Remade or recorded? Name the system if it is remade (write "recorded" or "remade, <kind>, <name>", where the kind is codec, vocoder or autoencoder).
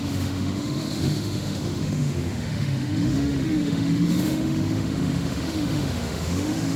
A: remade, autoencoder, DAC-VAE